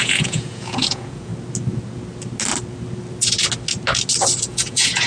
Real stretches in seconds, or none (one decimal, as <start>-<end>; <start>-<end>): 1.3-4.4

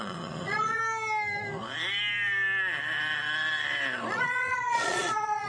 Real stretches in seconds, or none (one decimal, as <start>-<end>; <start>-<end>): 0.8-4.1

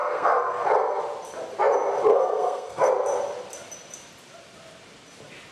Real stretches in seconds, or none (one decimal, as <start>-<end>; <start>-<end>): 1.0-2.1; 2.9-5.5

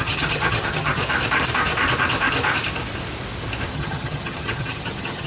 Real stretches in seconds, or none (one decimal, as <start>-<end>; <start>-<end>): 1.0-3.7

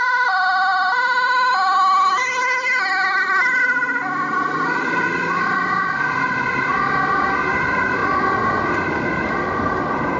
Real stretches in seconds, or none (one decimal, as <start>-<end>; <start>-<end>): 6.7-7.6

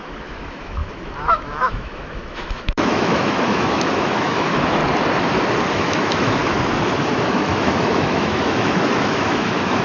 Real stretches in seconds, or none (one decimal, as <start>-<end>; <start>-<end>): 4.8-5.7; 6.4-7.0

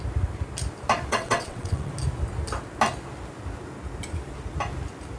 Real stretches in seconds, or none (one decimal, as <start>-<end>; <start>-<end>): 0.0-1.1; 1.9-5.2

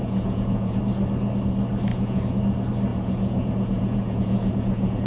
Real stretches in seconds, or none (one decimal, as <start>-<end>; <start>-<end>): 0.8-1.9; 2.4-2.9